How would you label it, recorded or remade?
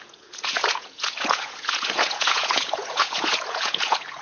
remade